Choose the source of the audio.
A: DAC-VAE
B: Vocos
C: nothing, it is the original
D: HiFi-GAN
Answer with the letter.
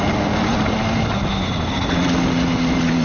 C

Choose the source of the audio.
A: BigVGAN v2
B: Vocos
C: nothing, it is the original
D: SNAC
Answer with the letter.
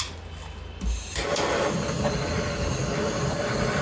C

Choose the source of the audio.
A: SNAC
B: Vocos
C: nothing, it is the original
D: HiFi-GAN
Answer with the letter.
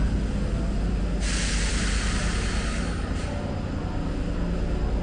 C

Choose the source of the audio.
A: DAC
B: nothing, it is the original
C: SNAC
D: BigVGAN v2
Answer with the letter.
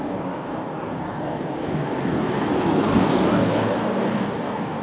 A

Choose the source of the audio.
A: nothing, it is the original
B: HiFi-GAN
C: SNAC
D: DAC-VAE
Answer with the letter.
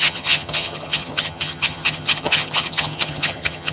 B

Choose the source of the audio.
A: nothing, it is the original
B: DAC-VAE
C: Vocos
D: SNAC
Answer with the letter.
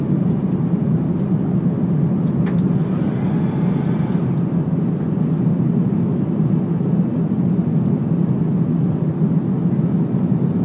A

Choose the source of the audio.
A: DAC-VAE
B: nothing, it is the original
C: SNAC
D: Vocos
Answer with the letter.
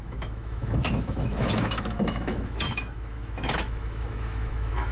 A